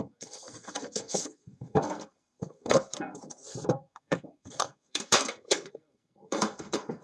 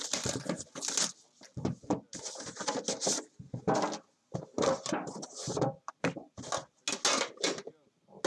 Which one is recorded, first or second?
second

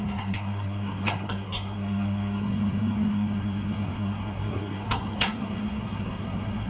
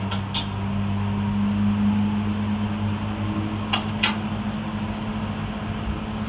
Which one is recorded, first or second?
second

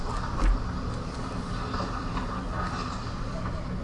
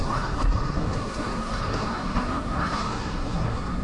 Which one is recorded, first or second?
first